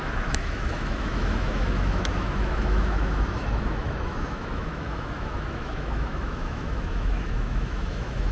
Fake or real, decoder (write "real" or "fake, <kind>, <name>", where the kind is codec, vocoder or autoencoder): fake, autoencoder, DAC-VAE